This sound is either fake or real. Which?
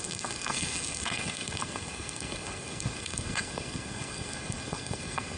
fake